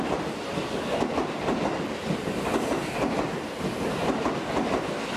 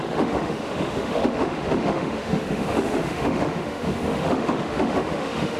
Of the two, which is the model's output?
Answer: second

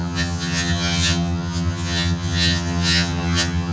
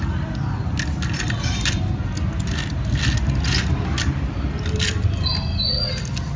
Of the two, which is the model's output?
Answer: first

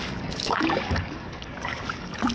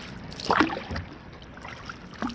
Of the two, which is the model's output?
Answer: first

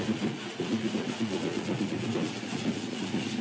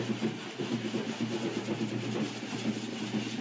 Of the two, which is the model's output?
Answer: first